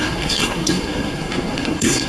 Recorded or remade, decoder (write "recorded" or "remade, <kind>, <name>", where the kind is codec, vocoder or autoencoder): remade, codec, SNAC